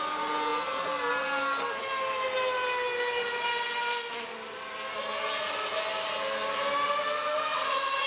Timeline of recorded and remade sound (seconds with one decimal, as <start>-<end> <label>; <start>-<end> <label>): 0.0-8.1 recorded

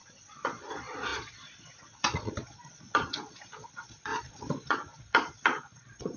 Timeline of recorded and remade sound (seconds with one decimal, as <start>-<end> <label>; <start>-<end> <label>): 0.0-6.2 remade